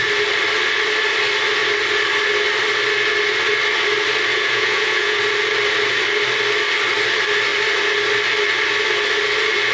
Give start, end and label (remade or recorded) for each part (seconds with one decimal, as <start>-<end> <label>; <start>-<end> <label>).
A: 0.0-4.3 recorded; 4.3-5.2 remade; 5.2-9.7 recorded